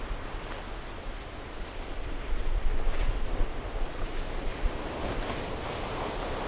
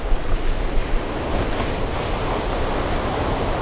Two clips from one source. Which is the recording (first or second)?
second